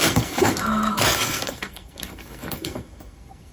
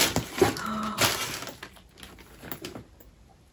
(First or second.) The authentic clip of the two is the second